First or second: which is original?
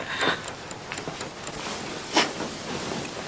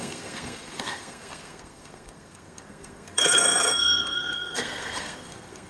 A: first